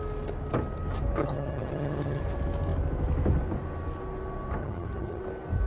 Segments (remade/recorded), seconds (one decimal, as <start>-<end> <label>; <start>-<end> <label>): 0.0-1.2 recorded; 1.2-2.2 remade; 2.2-4.6 recorded; 4.6-5.2 remade; 5.2-5.7 recorded